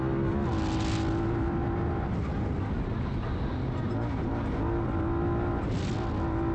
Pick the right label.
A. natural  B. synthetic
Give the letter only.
A